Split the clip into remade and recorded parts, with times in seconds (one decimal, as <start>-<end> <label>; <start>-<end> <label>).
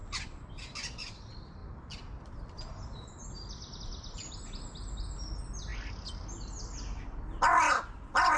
0.0-8.4 recorded